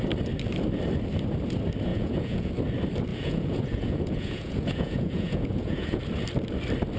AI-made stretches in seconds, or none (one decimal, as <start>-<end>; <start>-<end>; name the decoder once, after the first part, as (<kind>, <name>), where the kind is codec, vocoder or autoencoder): 1.9-2.5 (vocoder, Vocos); 3.1-6.0